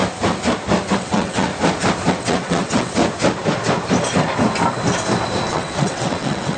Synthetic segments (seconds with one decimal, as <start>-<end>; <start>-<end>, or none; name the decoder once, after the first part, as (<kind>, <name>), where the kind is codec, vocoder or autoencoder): 0.9-1.5 (vocoder, WaveNeXt); 2.1-3.0; 5.5-6.6